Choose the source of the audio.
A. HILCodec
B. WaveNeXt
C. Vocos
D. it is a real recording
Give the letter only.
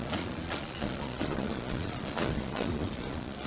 C